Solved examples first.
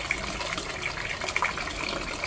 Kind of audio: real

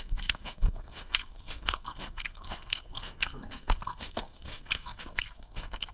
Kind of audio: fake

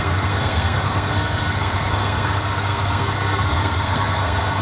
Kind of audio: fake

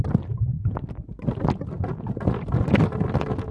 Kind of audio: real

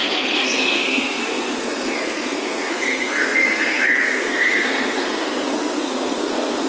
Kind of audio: fake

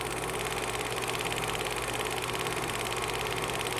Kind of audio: real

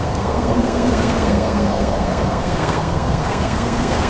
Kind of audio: fake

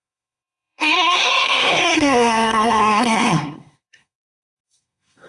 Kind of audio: fake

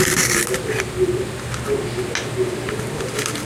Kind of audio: real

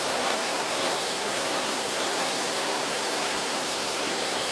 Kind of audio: fake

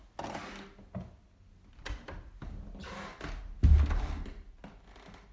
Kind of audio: real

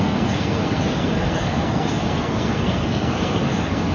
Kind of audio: fake